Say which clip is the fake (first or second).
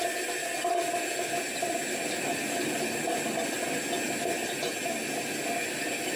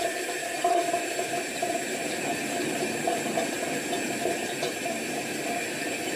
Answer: second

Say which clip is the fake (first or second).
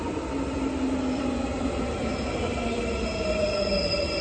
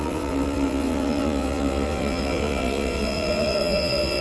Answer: second